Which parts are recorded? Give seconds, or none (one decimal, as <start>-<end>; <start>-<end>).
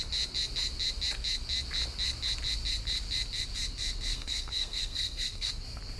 0.0-4.1; 5.5-6.0